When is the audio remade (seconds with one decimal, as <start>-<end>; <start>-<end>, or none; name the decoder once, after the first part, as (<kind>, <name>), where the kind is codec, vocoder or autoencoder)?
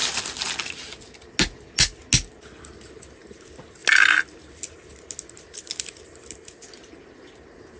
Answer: none